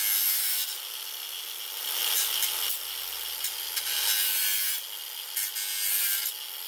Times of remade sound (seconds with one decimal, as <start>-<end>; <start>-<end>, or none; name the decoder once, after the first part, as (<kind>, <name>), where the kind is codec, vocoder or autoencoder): none